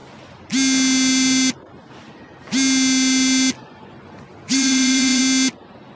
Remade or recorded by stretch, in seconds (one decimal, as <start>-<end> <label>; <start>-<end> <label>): 0.0-3.6 recorded; 3.6-5.2 remade; 5.2-6.0 recorded